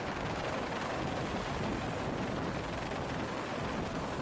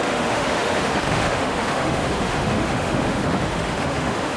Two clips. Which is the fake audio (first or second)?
second